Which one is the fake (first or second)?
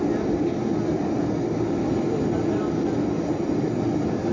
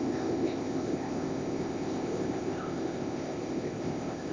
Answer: second